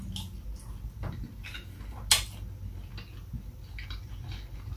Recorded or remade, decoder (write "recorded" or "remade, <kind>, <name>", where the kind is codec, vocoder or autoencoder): recorded